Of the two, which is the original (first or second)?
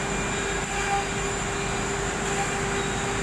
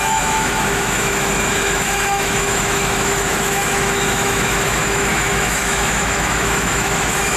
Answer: first